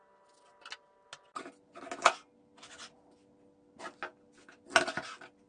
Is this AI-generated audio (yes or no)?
no